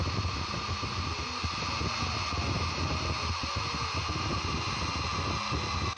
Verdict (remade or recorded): recorded